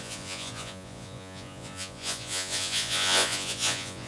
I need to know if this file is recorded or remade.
remade